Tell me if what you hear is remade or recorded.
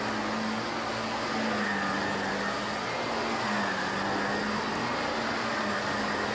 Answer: recorded